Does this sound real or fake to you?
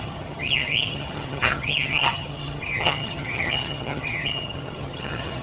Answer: fake